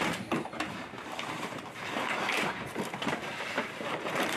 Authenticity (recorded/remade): remade